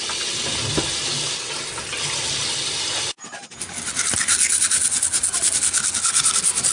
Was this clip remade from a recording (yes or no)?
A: no